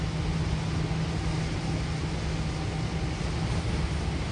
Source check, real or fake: real